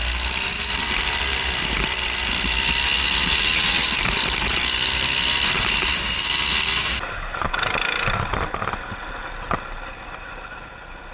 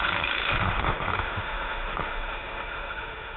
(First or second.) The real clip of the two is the first